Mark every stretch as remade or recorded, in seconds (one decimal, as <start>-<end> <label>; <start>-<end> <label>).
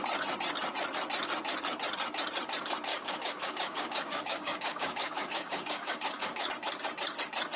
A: 0.0-2.9 recorded; 2.9-6.5 remade; 6.5-7.6 recorded